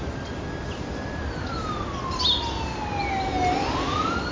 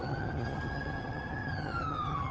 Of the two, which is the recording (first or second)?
first